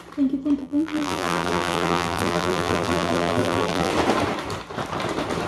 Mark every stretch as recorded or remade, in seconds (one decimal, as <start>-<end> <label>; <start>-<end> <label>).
0.0-0.6 recorded; 0.6-3.9 remade; 3.9-5.5 recorded